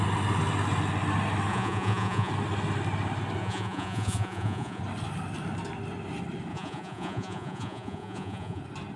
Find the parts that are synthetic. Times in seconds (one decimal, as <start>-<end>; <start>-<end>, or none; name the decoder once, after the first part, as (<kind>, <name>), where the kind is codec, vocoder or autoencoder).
1.5-2.3 (vocoder, Vocos); 3.4-4.8; 6.5-8.6